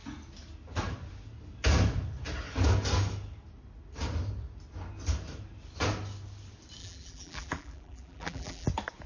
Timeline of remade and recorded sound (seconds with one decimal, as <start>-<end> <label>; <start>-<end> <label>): 0.0-6.8 recorded; 6.8-8.7 remade; 8.7-9.1 recorded